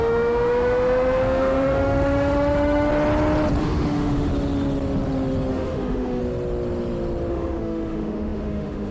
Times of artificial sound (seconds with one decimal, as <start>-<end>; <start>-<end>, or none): 0.0-2.9; 3.6-4.3; 5.5-6.2; 7.3-8.9